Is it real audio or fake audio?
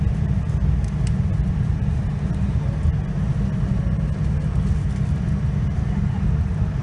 real